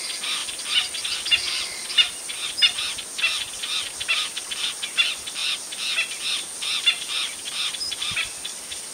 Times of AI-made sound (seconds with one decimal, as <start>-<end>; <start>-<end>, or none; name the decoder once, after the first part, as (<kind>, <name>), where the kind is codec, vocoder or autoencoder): 5.4-8.9 (vocoder, BigVGAN v2)